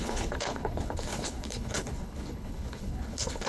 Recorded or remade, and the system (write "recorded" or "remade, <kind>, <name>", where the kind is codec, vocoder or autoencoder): remade, codec, HILCodec